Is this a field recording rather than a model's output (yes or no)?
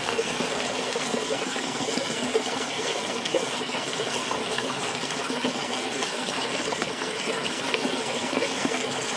no